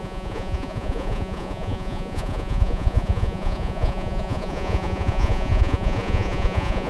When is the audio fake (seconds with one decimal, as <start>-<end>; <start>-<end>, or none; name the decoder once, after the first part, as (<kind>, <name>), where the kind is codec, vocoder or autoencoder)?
0.0-6.9 (vocoder, Vocos)